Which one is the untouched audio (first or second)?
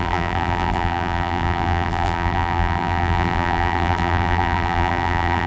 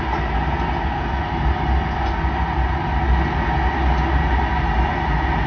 second